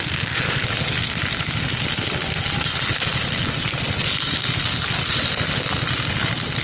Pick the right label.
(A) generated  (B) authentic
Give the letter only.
B